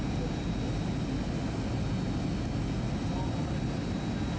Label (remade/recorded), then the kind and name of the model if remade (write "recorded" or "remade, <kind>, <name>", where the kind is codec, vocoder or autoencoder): recorded